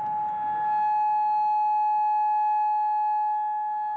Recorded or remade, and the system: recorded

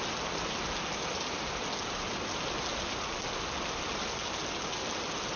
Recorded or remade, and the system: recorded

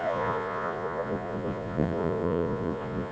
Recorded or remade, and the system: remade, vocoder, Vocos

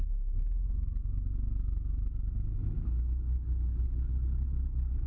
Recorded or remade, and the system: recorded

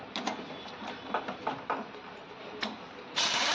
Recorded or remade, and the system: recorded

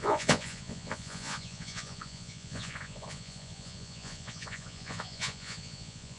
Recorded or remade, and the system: remade, vocoder, Vocos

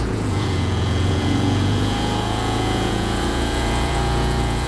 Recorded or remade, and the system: remade, vocoder, Vocos